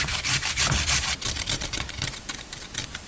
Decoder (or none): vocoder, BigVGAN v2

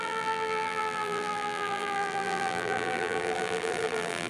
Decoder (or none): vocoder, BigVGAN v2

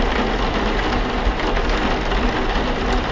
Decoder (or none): none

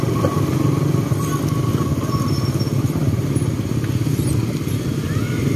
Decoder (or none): vocoder, BigVGAN v2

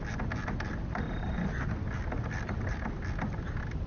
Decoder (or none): none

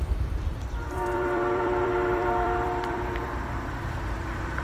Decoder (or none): vocoder, BigVGAN v2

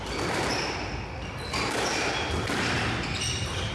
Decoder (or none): none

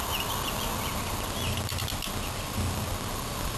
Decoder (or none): none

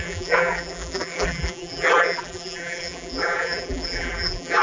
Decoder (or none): vocoder, BigVGAN v2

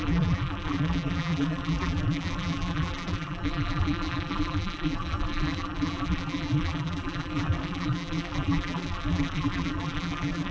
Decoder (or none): vocoder, BigVGAN v2